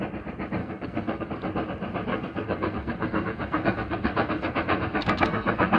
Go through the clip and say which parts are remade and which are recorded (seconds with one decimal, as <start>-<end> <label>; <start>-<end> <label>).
0.0-0.6 recorded; 0.6-1.3 remade; 1.3-2.1 recorded; 2.1-5.8 remade